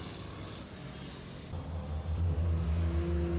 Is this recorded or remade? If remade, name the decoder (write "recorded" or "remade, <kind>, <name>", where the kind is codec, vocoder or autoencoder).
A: recorded